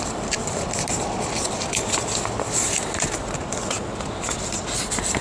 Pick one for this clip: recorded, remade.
recorded